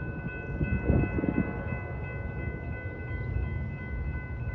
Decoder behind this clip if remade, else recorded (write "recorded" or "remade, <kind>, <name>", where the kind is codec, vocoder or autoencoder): recorded